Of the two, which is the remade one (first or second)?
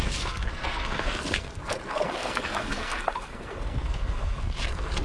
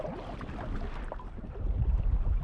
first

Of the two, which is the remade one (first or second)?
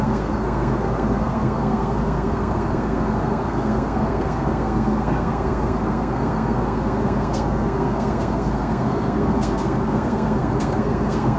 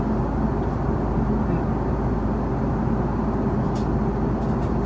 first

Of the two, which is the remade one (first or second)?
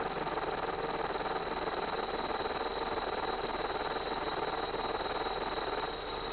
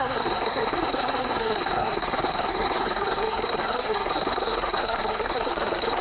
second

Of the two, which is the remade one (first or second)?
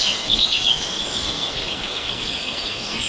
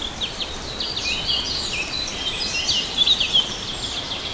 first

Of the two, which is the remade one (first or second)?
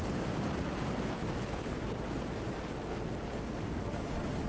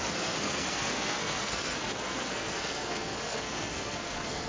second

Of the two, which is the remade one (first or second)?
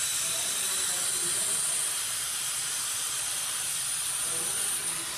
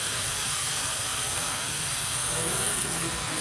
second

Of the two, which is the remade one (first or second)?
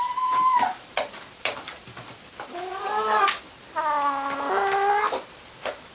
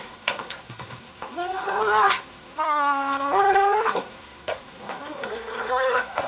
second